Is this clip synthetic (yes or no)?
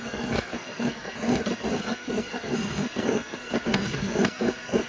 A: yes